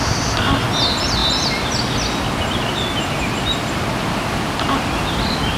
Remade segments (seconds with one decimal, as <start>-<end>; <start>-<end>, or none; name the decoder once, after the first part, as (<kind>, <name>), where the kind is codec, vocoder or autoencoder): 0.0-1.2 (vocoder, BigVGAN v2); 3.2-5.6